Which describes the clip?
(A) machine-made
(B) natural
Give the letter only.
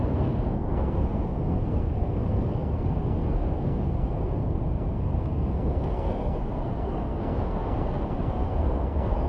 A